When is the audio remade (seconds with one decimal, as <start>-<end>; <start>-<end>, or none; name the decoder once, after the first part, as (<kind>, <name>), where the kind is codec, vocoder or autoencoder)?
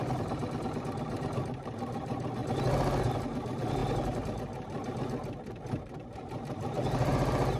0.0-0.4 (vocoder, BigVGAN v2); 1.1-2.4; 3.0-7.6